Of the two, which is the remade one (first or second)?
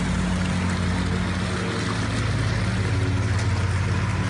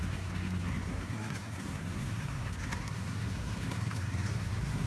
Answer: second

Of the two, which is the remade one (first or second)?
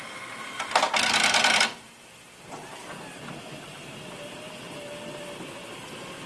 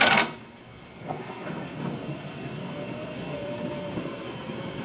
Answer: second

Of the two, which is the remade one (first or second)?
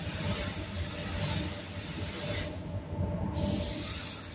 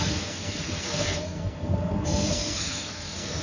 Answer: second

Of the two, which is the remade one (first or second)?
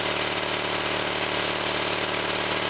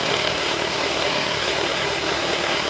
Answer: second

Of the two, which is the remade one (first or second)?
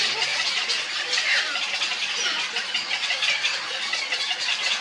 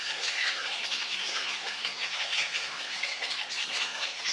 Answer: second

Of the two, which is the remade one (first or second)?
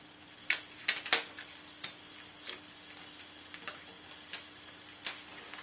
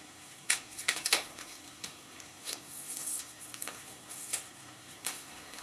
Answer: second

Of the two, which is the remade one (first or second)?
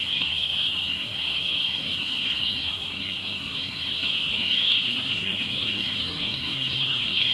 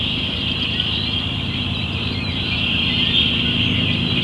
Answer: first